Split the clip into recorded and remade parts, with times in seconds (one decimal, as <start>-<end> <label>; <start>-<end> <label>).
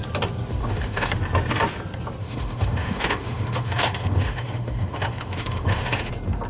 0.0-0.6 recorded; 0.6-1.1 remade; 1.1-2.2 recorded; 2.2-6.1 remade; 6.1-6.5 recorded